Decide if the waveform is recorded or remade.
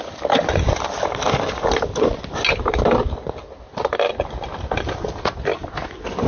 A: recorded